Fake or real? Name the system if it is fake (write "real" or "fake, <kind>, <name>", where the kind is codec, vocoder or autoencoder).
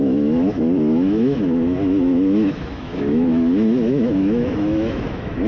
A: fake, autoencoder, DAC-VAE